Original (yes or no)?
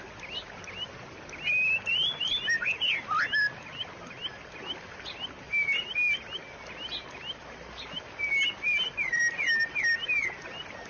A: yes